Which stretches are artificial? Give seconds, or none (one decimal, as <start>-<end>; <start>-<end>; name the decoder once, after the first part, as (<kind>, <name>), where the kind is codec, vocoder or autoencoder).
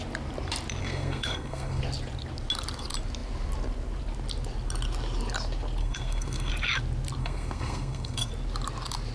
0.8-1.8 (codec, SNAC); 5.8-6.5; 7.2-8.3